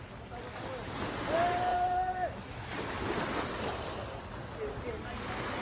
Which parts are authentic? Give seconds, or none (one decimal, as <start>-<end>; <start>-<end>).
0.0-1.7; 3.9-5.6